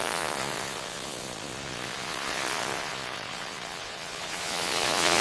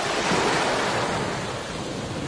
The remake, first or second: first